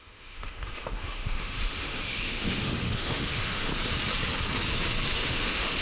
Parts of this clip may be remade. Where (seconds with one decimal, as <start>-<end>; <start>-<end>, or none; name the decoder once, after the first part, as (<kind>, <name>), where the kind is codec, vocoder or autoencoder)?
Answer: 0.0-3.7 (autoencoder, DAC-VAE); 5.1-5.8